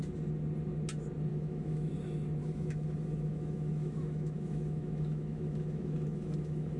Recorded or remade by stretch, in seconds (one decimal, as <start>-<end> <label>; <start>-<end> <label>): 0.0-1.3 recorded; 1.3-1.9 remade; 1.9-2.4 recorded; 2.4-6.8 remade